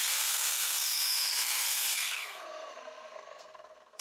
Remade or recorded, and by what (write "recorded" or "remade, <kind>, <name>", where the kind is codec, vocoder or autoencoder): remade, codec, SNAC